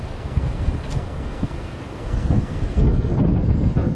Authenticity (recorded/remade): remade